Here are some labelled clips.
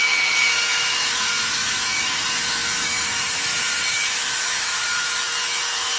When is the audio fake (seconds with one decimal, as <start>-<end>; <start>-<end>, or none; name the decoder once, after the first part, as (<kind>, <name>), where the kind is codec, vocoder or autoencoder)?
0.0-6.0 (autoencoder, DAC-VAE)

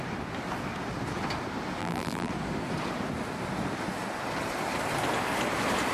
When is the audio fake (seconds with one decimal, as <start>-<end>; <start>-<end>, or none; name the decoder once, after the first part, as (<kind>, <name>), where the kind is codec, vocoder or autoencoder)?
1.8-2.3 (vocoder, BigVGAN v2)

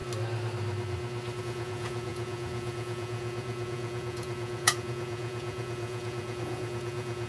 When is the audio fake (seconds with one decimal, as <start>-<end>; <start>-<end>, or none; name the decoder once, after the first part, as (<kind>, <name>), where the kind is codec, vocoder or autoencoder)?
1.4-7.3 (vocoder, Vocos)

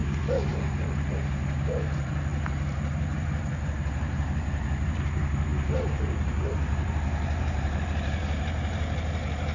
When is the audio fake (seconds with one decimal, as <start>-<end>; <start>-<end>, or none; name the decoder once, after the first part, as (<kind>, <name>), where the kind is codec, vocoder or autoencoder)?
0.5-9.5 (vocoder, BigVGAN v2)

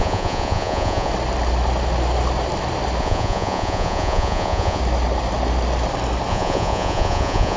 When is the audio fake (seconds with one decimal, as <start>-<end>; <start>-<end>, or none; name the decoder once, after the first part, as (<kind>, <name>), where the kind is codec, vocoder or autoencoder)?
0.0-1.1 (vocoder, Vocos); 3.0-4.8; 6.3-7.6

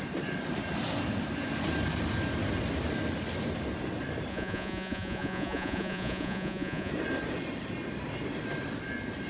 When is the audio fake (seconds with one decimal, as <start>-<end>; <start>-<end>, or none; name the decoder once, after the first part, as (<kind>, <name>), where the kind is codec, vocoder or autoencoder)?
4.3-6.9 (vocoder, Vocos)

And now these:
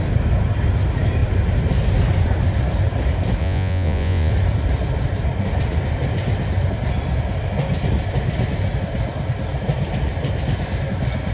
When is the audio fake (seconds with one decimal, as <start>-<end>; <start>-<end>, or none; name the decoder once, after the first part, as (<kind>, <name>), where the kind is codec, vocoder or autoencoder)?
3.4-4.3 (vocoder, Vocos)